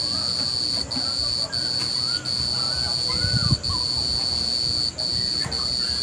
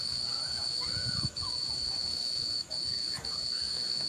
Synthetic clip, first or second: second